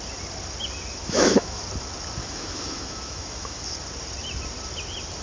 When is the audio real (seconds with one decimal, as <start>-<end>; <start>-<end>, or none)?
0.0-1.0; 1.6-2.2; 3.6-5.2